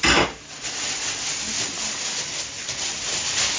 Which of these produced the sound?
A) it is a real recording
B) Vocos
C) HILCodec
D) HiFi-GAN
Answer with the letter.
A